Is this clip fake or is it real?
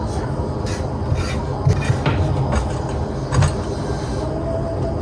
real